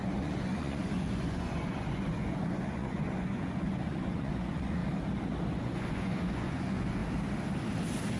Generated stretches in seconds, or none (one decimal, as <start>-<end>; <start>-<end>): 0.0-4.8; 5.5-7.0